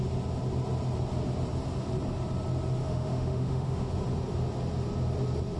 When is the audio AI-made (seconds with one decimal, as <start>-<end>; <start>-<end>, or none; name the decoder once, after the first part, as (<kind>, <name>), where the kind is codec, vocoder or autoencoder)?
2.8-3.9 (autoencoder, DAC-VAE)